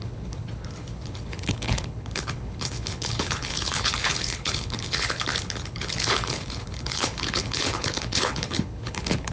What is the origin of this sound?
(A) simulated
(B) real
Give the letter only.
A